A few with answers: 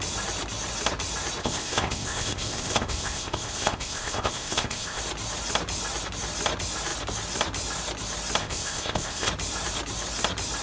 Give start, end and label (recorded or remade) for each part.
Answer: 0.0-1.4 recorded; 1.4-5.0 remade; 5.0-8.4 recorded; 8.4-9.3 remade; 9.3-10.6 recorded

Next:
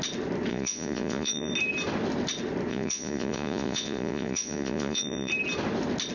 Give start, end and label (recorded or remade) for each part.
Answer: 0.0-0.5 recorded; 0.5-1.5 remade; 1.5-2.7 recorded; 2.7-5.3 remade; 5.3-6.1 recorded

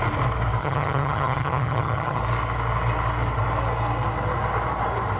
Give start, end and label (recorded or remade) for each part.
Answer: 0.0-0.6 recorded; 0.6-2.2 remade; 2.2-5.2 recorded

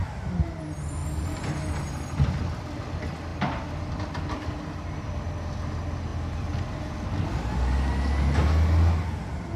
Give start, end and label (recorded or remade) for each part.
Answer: 0.0-9.6 recorded

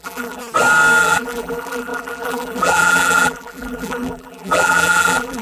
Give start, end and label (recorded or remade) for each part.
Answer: 0.0-0.4 remade; 0.4-1.0 recorded; 1.0-5.4 remade

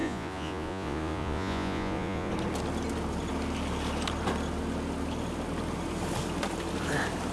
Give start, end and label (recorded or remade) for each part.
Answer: 0.0-2.3 remade; 2.3-7.3 recorded

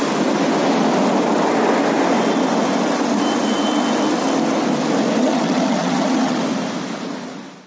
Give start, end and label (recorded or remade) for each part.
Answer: 0.0-5.2 recorded; 5.2-6.4 remade; 6.4-7.7 recorded

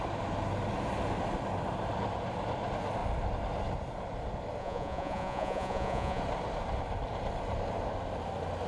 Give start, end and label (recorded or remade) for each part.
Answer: 0.0-4.6 recorded; 4.6-6.2 remade; 6.2-8.7 recorded